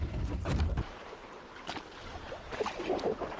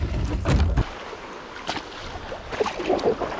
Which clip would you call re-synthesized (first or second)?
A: first